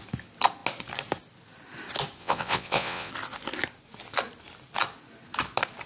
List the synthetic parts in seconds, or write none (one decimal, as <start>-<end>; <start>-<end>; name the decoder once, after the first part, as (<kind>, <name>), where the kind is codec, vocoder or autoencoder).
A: 2.2-3.1 (vocoder, WaveNeXt)